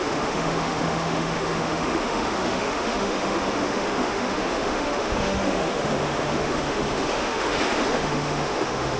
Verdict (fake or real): fake